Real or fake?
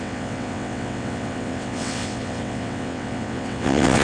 fake